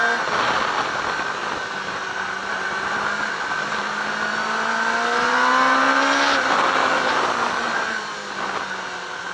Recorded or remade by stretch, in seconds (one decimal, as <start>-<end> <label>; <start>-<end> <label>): 0.0-9.3 recorded